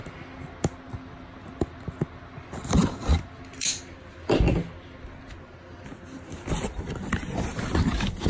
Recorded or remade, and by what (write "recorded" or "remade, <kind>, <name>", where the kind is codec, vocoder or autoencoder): recorded